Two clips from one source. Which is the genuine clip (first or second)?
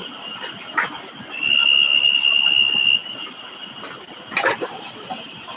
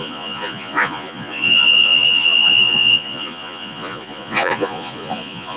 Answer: first